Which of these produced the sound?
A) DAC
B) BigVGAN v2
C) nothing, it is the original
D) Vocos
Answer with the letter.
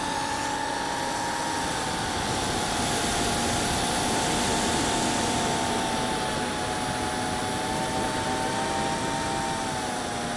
C